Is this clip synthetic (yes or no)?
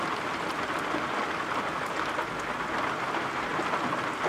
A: no